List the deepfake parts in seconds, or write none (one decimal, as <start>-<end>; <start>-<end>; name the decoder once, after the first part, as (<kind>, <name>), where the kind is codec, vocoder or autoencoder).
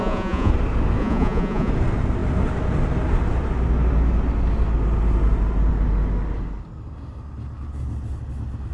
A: 0.0-0.5 (vocoder, Vocos); 1.0-1.7